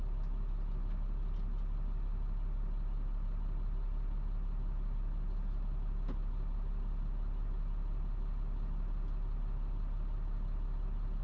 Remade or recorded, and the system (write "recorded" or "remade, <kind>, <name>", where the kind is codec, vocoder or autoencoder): recorded